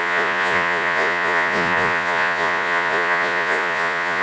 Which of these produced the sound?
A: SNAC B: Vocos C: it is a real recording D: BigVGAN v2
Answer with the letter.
B